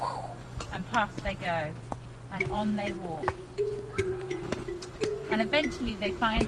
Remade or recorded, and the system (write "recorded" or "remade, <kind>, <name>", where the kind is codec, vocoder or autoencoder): remade, vocoder, Vocos